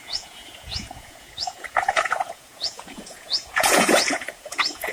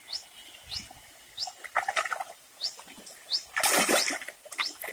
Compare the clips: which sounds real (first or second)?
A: second